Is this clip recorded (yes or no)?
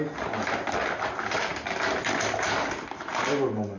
yes